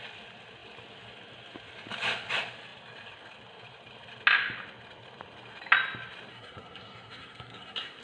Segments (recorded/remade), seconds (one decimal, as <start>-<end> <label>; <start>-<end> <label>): 0.0-6.3 recorded; 6.3-8.0 remade